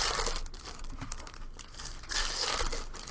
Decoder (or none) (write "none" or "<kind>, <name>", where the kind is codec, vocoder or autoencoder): none